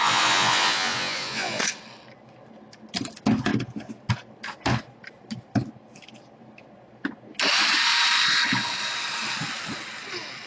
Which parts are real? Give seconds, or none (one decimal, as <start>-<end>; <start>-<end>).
1.6-10.5